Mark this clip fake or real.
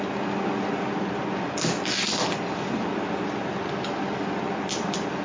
real